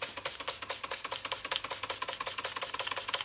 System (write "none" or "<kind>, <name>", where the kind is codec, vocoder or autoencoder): none